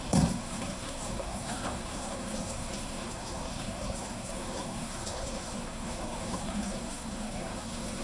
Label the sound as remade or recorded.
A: remade